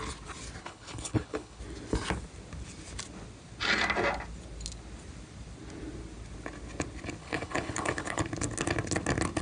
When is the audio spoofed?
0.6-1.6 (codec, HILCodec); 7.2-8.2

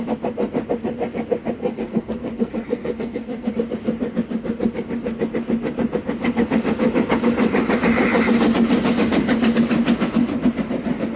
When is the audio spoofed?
1.6-3.5 (codec, SNAC)

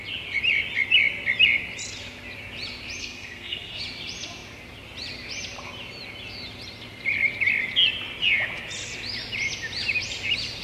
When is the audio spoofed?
3.0-3.8 (codec, SNAC)

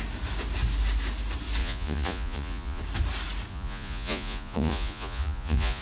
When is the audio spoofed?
1.6-2.8 (vocoder, Vocos); 3.5-5.8

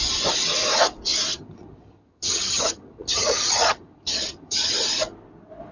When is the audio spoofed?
1.3-4.7 (vocoder, HiFi-GAN)

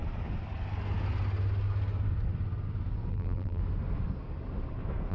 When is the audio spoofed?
3.1-3.6 (vocoder, BigVGAN v2)

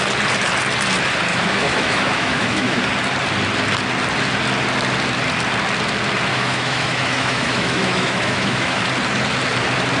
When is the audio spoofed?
1.3-2.8 (autoencoder, DAC-VAE); 6.3-8.8

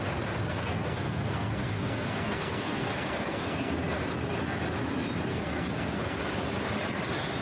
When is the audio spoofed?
0.5-3.7 (codec, SNAC); 5.3-6.2